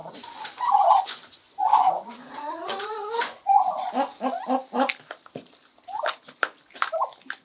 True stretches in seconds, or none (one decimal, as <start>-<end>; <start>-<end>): 3.6-7.4